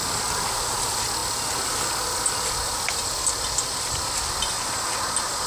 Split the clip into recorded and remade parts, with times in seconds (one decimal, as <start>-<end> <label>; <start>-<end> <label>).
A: 0.0-5.5 recorded